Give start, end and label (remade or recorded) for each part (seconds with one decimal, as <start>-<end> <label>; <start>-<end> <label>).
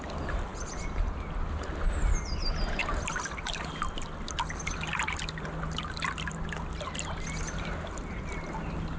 0.0-9.0 recorded